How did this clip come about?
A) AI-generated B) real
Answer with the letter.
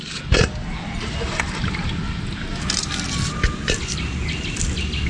B